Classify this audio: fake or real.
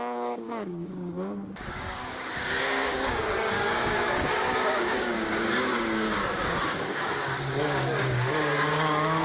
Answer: fake